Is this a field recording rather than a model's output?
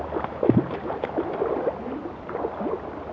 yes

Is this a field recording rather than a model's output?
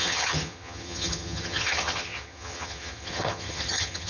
no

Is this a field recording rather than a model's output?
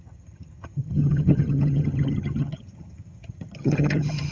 no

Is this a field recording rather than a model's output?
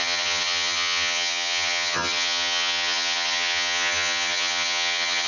no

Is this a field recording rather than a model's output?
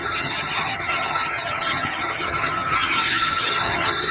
no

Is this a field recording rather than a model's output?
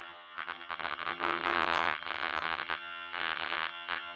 no